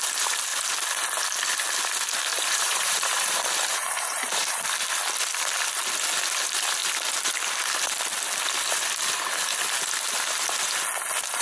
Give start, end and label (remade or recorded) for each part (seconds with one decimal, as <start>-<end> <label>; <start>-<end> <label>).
0.0-2.3 recorded; 2.3-4.6 remade; 4.6-11.4 recorded